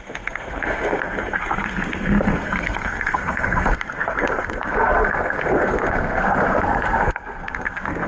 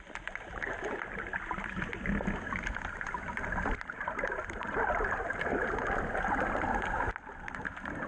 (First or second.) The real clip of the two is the second